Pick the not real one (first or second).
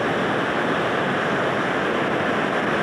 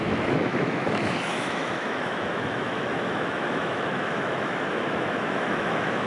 second